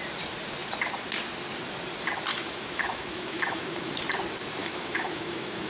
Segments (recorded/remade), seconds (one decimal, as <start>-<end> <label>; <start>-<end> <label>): 0.0-2.3 recorded; 2.3-3.9 remade; 3.9-4.6 recorded; 4.6-5.7 remade